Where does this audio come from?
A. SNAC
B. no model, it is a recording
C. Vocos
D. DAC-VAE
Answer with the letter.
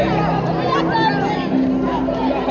B